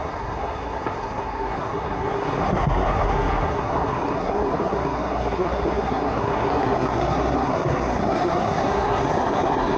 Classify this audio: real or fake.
fake